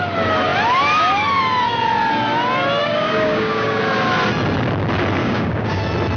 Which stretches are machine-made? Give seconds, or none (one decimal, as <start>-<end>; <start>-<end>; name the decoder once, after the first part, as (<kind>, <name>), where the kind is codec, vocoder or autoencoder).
2.8-3.8 (codec, DAC); 5.2-5.8